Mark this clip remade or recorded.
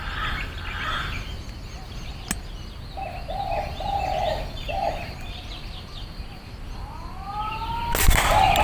recorded